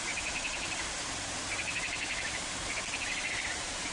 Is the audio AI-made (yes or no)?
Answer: yes